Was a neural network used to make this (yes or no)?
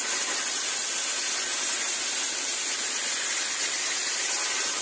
no